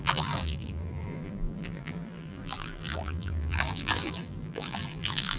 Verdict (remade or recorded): remade